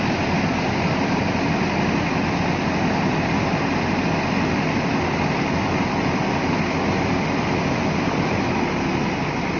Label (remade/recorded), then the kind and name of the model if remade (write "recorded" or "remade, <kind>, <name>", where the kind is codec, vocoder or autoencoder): recorded